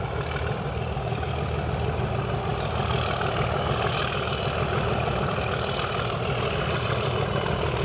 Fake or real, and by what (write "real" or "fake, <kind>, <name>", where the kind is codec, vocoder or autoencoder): real